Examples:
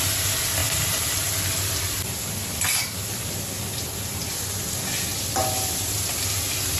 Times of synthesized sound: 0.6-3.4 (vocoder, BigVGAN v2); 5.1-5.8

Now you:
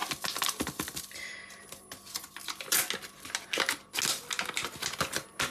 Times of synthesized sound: none

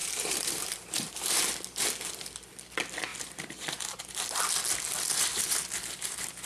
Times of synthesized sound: 0.0-1.5 (vocoder, BigVGAN v2); 3.1-4.0; 5.3-6.5

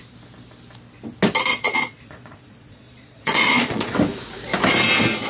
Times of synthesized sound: 1.5-3.9 (vocoder, Vocos)